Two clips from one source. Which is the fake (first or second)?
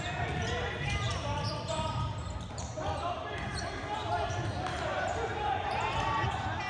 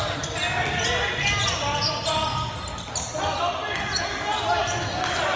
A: first